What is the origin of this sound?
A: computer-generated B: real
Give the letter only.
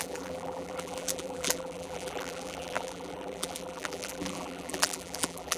A